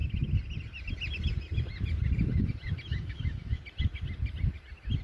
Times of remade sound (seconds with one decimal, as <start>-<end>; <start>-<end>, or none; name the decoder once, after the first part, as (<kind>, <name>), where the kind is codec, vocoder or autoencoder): 2.9-3.6 (autoencoder, DAC-VAE)